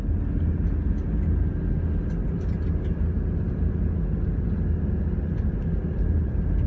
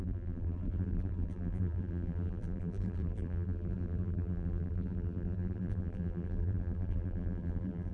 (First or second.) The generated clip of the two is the second